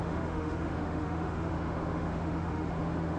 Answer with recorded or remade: remade